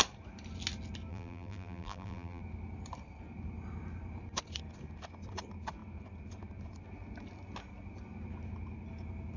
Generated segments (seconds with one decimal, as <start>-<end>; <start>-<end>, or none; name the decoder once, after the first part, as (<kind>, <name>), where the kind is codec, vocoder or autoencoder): 1.1-2.4 (vocoder, BigVGAN v2)